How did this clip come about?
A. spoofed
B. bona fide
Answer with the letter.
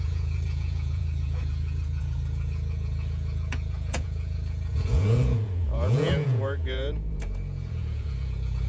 A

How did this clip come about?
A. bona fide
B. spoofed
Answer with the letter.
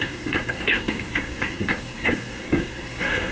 B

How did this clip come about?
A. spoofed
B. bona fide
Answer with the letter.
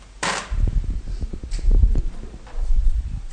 A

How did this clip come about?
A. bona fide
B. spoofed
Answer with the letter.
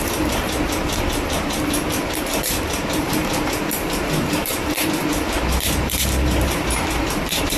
B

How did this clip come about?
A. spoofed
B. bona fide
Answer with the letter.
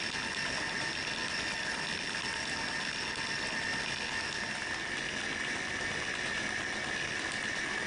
B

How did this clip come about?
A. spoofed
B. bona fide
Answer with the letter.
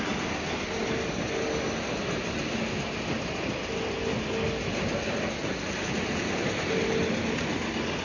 B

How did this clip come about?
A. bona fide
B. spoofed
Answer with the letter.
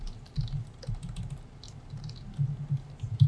A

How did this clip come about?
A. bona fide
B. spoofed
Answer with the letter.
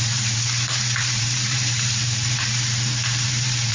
B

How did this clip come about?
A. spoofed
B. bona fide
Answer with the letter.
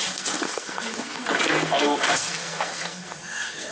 A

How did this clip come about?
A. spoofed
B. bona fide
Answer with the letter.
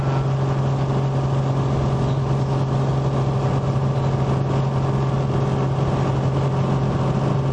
B